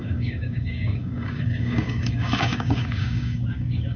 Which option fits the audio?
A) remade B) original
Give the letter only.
A